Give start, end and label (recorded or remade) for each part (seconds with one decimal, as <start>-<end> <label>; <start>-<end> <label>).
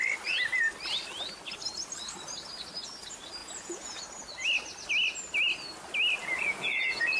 0.0-3.4 recorded; 3.4-4.0 remade; 4.0-6.2 recorded; 6.2-7.2 remade